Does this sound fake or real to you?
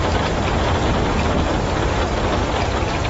real